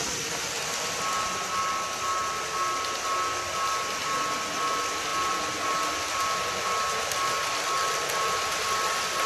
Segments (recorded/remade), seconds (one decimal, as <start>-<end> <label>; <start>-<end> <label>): 0.0-9.3 recorded